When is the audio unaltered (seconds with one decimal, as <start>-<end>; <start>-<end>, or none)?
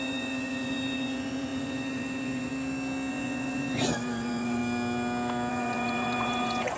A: 2.5-3.1; 4.6-5.5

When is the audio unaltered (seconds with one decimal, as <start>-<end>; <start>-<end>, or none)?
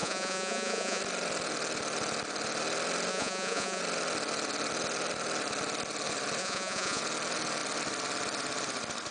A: 1.0-3.1; 3.8-6.4; 7.0-9.1